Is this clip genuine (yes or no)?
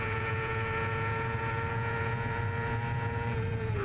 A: no